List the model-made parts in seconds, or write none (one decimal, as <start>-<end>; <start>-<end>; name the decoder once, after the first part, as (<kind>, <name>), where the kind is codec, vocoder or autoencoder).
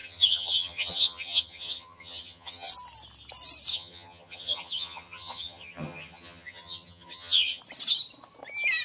0.0-2.7 (vocoder, HiFi-GAN); 3.7-7.6